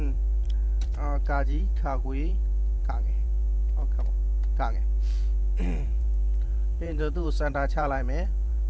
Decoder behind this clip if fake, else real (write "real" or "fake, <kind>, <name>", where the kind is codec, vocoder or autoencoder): fake, vocoder, BigVGAN v2